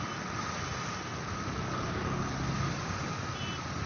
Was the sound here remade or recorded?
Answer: recorded